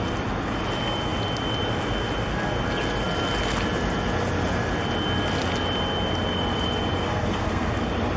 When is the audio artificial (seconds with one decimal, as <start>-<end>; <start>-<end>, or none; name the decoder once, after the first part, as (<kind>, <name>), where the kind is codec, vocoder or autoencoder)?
7.0-7.7 (codec, SNAC)

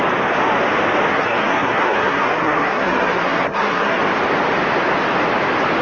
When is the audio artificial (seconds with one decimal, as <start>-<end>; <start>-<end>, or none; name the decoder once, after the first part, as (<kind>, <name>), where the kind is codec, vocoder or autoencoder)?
1.1-4.0 (codec, SNAC)